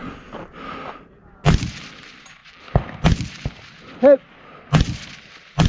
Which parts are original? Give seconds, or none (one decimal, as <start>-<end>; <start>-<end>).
0.0-5.7